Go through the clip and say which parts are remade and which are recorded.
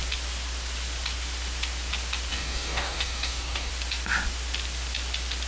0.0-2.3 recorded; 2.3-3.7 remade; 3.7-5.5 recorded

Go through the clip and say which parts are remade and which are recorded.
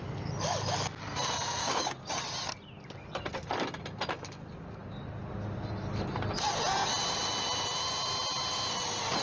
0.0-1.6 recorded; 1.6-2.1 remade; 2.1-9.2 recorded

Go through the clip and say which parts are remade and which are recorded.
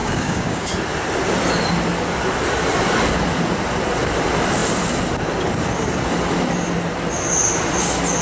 0.0-0.7 remade; 0.7-8.2 recorded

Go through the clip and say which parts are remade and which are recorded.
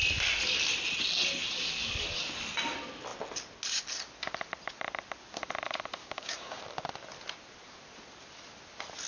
0.0-6.0 recorded; 6.0-6.6 remade; 6.6-9.1 recorded